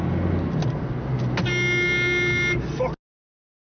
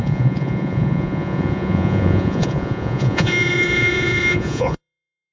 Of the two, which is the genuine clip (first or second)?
first